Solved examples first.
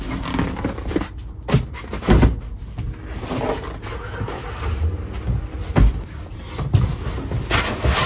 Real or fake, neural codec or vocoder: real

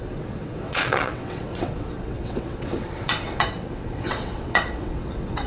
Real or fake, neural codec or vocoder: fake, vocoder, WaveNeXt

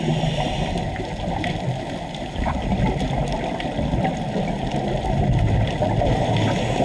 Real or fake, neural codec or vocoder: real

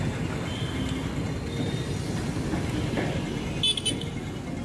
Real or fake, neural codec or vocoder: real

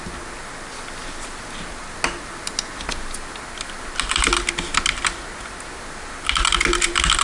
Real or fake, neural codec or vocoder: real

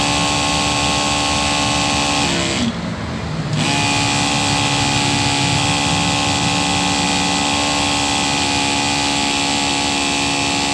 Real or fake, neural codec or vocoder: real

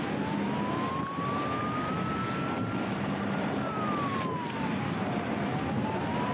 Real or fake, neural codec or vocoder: real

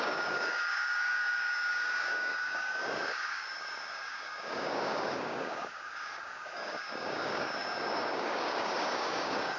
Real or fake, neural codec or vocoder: fake, codec, DAC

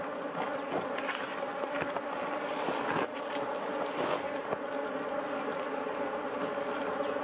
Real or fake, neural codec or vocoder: real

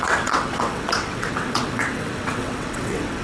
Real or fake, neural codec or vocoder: fake, vocoder, WaveNeXt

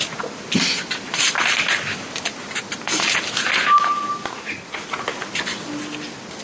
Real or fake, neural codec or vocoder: real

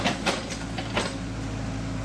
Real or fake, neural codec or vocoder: real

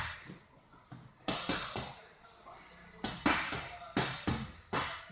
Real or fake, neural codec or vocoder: real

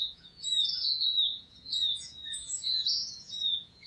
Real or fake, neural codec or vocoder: fake, vocoder, Vocos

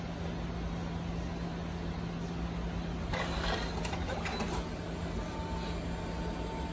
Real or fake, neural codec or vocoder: real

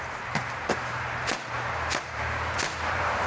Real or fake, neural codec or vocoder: fake, vocoder, BigVGAN v2